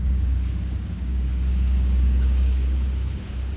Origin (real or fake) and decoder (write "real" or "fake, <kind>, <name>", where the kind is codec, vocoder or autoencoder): fake, codec, DAC